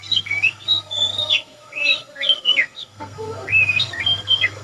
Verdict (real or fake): fake